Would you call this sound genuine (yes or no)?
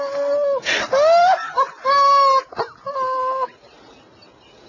yes